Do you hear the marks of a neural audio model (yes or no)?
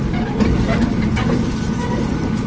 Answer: no